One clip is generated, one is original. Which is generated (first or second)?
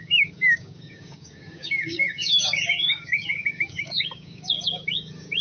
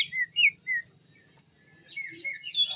first